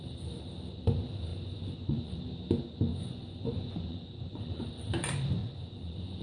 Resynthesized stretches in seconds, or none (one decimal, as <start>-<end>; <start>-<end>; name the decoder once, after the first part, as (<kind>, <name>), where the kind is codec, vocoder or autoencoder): 1.3-2.2 (vocoder, Vocos); 2.9-4.6; 5.4-6.2